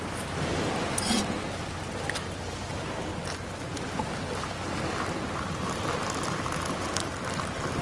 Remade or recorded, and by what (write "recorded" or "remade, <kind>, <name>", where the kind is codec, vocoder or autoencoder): recorded